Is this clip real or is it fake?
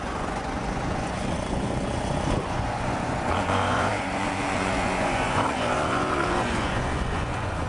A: fake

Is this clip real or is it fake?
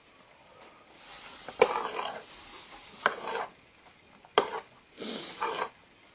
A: real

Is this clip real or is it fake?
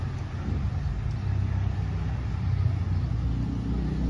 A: real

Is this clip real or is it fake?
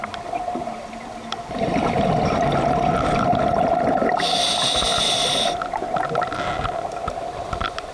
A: real